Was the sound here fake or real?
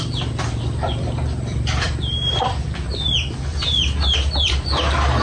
fake